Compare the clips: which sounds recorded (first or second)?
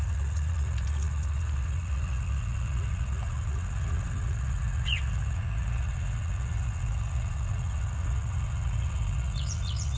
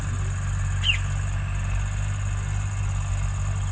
second